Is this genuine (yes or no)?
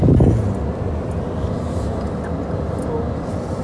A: yes